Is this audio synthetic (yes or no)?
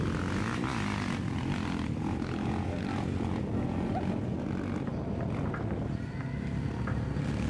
no